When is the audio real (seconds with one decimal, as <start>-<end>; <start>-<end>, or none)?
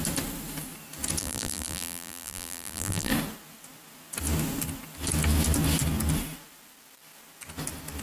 0.0-1.2; 3.1-8.0